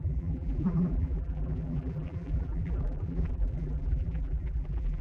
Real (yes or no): no